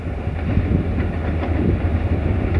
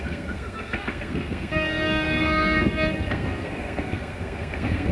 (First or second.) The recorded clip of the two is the first